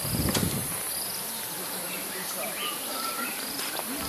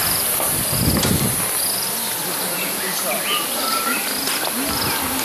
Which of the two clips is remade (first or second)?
first